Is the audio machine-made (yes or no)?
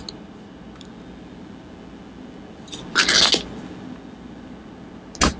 no